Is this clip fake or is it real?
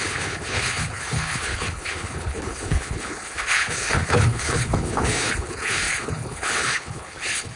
fake